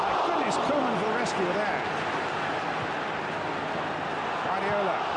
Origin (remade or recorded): recorded